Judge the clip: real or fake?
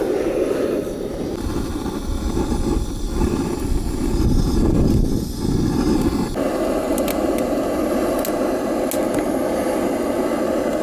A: real